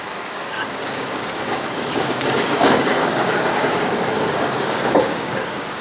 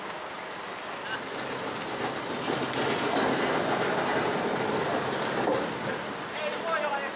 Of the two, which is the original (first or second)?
second